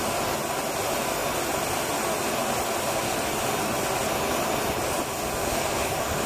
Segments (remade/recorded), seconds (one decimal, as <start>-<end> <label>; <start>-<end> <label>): 0.0-5.4 recorded; 5.4-6.3 remade